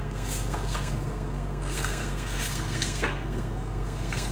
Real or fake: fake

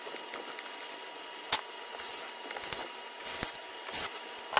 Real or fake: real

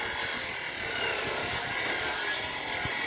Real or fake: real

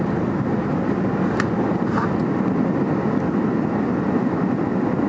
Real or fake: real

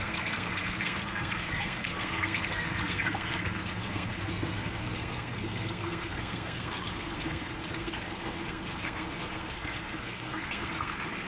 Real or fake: fake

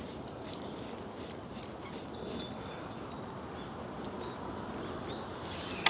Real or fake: real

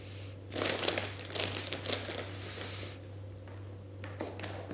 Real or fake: real